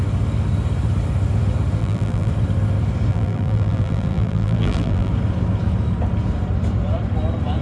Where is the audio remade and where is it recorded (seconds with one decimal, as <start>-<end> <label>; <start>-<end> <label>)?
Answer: 0.0-1.8 recorded; 1.8-2.3 remade; 2.3-3.1 recorded; 3.1-5.1 remade; 5.1-7.6 recorded